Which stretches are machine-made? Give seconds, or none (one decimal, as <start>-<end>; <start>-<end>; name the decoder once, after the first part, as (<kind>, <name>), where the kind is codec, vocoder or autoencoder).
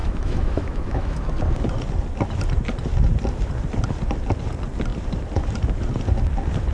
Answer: 0.0-1.2 (autoencoder, DAC-VAE)